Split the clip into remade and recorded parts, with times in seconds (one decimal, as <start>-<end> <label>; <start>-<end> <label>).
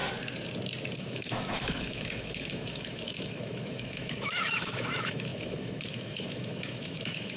0.0-1.0 recorded; 1.0-7.4 remade